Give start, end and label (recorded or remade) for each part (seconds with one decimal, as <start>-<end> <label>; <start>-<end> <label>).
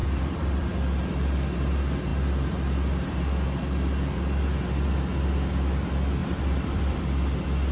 0.0-0.7 remade; 0.7-6.2 recorded; 6.2-7.0 remade; 7.0-7.7 recorded